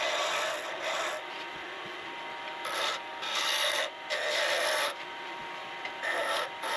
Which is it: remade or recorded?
recorded